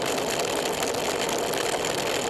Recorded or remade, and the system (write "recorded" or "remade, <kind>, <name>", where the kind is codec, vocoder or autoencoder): recorded